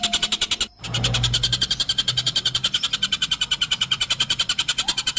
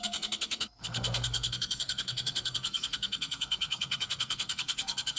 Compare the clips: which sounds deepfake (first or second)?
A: second